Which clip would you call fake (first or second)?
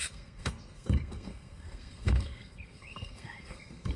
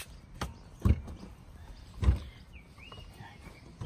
first